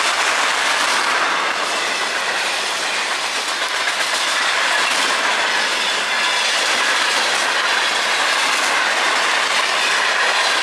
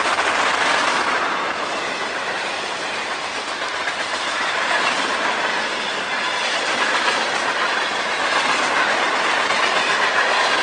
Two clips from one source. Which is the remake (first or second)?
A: second